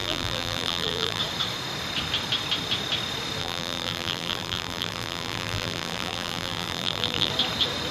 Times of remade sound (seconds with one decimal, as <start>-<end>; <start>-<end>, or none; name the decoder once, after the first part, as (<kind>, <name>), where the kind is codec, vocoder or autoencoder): 0.0-1.2 (vocoder, BigVGAN v2); 3.4-7.3